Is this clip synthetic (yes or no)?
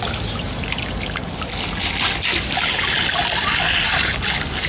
no